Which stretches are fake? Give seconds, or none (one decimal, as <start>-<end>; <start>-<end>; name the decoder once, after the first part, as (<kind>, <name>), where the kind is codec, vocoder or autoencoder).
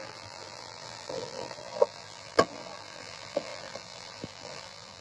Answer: 0.0-5.0 (vocoder, BigVGAN v2)